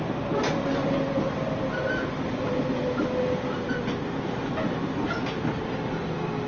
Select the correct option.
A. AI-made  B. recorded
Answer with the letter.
B